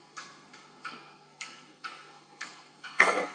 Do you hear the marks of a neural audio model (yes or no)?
yes